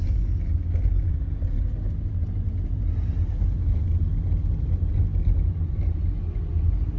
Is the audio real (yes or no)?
yes